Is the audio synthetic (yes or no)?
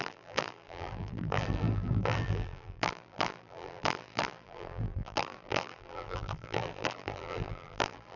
yes